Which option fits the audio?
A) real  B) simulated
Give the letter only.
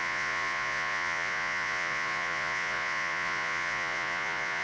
B